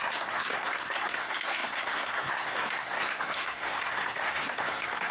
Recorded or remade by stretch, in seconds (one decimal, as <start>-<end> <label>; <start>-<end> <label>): 0.0-5.1 remade